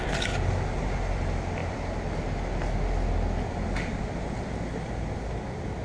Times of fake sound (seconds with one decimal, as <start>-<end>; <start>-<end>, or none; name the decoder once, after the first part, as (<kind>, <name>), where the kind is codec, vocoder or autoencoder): none

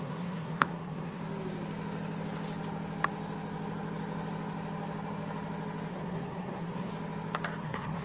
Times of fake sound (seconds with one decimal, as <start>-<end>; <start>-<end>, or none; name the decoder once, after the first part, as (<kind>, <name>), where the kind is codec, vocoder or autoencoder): 0.0-1.2 (codec, SNAC); 5.9-6.9; 7.6-8.0